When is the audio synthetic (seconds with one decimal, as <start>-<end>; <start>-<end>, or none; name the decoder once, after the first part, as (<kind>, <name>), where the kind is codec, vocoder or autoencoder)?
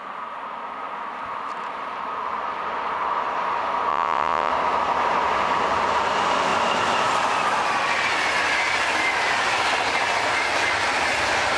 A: 3.9-4.5 (vocoder, WaveNeXt)